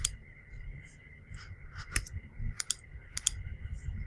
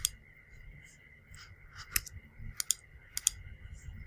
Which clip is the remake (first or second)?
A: first